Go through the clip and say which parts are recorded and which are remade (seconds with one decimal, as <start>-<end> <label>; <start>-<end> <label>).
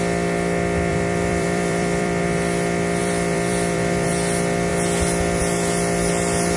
0.0-0.9 recorded; 0.9-2.2 remade; 2.2-3.0 recorded; 3.0-4.1 remade; 4.1-6.6 recorded